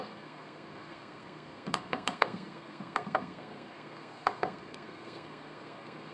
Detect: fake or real fake